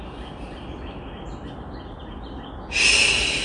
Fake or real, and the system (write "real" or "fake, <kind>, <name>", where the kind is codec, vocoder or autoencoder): real